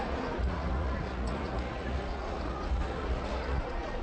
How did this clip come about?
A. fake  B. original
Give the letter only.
A